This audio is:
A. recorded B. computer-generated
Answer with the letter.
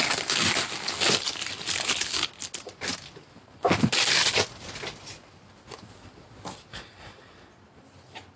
A